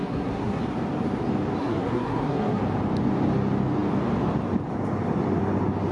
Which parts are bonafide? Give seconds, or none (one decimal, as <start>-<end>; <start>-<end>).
0.6-1.6; 2.6-5.9

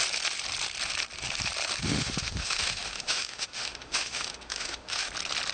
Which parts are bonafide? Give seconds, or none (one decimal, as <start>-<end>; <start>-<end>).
0.0-1.8; 5.1-5.5

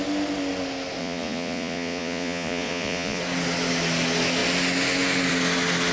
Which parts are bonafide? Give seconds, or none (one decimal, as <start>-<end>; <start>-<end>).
0.0-1.0; 3.2-5.9

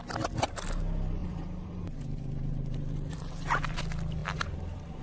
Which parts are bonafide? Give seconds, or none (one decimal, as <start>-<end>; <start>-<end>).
0.0-1.2; 3.8-4.2

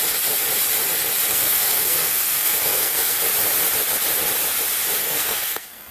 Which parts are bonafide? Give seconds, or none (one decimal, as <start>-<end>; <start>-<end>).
0.0-1.3; 3.2-5.0

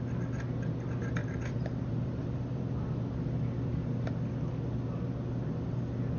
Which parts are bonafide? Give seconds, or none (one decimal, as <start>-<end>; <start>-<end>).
0.0-1.2; 2.9-6.2

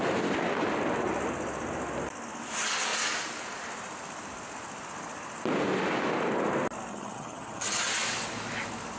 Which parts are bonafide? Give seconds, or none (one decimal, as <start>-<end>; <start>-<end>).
0.0-6.9; 7.8-9.0